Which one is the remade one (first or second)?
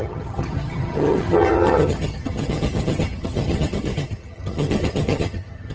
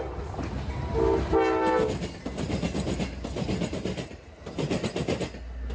first